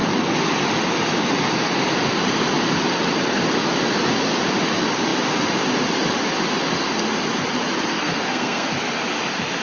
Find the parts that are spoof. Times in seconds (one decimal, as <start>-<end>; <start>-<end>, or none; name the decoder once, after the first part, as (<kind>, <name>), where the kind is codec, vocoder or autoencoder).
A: 7.9-8.7 (codec, SNAC)